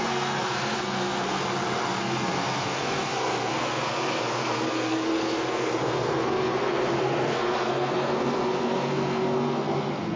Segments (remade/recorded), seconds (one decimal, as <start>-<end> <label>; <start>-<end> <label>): 0.0-1.4 remade; 1.4-2.0 recorded; 2.0-10.2 remade